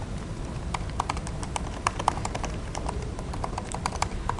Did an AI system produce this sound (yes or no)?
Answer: yes